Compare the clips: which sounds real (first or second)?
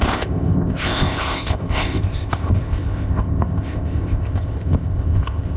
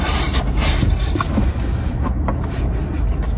second